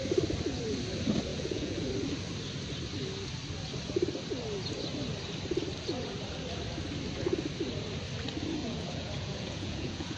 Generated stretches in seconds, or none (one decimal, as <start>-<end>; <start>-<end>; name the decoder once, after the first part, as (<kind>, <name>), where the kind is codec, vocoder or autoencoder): 1.3-1.9 (vocoder, Vocos); 8.6-10.2

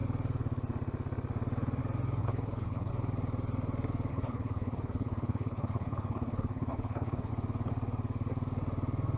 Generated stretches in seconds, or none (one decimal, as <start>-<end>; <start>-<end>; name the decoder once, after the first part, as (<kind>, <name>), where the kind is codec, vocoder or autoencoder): 2.2-2.9 (codec, HILCodec); 4.1-7.3

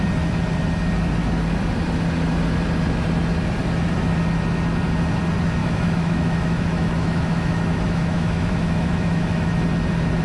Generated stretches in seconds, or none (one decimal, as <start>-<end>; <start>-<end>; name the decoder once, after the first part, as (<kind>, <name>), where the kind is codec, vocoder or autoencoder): 5.6-9.6 (autoencoder, DAC-VAE)

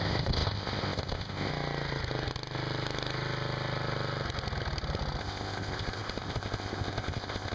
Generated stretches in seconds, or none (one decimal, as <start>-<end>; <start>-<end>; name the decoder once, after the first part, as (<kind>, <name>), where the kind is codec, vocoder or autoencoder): 0.0-1.5 (codec, ZipCodec); 5.2-7.5

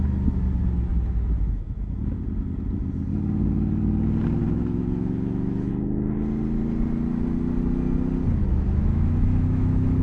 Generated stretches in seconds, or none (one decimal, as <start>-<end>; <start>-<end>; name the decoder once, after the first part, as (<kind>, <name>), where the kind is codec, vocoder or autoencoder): 0.9-1.8 (autoencoder, DAC-VAE); 4.4-5.7; 8.4-10.0

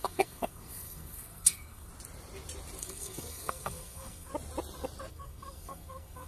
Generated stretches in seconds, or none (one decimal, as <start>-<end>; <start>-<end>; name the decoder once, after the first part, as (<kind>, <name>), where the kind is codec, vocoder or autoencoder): 0.0-1.9 (codec, SNAC); 2.8-4.3; 5.1-6.3

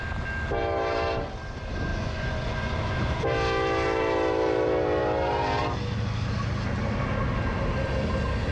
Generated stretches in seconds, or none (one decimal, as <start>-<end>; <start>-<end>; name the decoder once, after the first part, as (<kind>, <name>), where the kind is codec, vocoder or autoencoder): 1.9-3.2 (vocoder, Vocos)

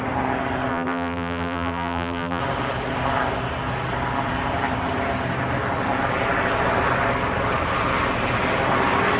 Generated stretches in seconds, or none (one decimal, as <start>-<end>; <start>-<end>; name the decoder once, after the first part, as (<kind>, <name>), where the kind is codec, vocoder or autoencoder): 0.7-2.4 (vocoder, BigVGAN v2)